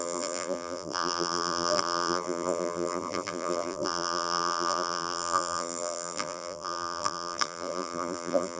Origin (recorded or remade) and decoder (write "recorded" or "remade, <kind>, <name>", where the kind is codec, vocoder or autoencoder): remade, vocoder, BigVGAN v2